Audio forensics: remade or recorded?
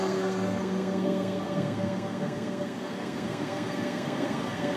remade